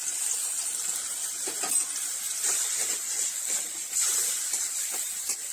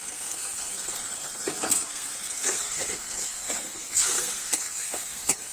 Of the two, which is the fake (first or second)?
second